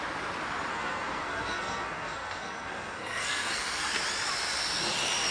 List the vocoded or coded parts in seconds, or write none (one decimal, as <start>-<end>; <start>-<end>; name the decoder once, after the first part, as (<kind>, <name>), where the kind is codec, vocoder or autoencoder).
0.7-3.9 (codec, SNAC)